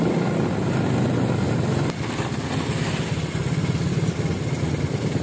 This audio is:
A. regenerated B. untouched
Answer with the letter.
B